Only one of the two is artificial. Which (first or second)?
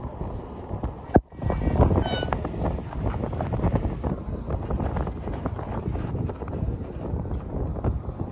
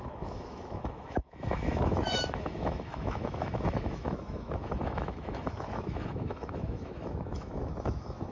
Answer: second